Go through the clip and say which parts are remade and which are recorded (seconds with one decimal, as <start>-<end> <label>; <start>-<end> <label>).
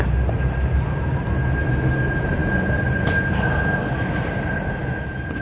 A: 0.0-5.4 recorded